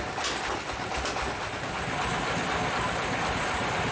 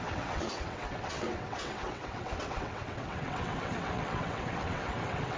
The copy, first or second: second